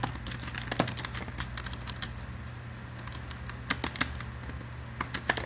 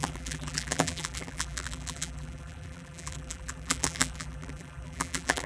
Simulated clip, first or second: second